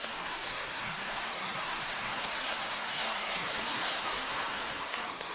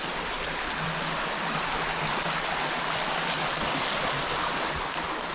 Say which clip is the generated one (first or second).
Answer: first